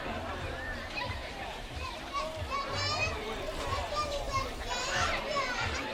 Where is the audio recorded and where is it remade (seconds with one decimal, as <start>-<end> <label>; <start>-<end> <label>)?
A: 0.0-5.9 remade